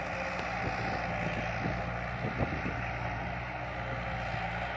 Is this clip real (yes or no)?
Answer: yes